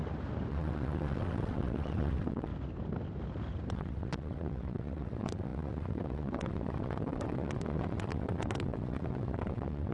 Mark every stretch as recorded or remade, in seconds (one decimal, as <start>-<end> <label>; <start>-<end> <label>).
0.0-0.5 recorded; 0.5-2.5 remade; 2.5-3.7 recorded; 3.7-9.9 remade